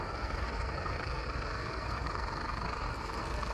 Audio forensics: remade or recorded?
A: remade